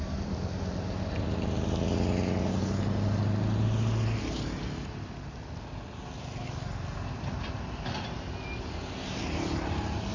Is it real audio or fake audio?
real